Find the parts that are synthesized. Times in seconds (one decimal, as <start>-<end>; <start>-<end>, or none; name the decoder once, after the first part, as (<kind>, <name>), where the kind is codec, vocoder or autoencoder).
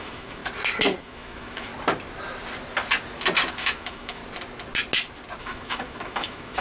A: 0.0-0.4 (autoencoder, DAC-VAE); 1.0-1.7; 3.5-4.2; 5.4-6.6